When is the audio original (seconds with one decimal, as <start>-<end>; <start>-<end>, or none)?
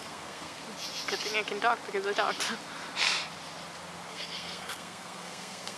0.6-4.1